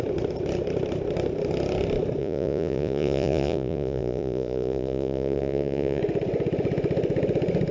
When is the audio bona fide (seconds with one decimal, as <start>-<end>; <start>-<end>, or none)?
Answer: 0.0-2.2; 6.0-7.7

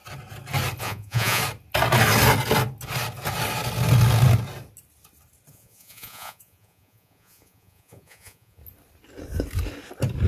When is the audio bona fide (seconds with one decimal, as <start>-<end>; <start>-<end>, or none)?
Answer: 0.0-0.8; 1.4-5.5; 8.6-10.3

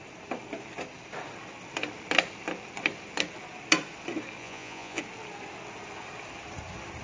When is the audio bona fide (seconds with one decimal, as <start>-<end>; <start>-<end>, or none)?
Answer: 0.0-4.4; 5.0-7.0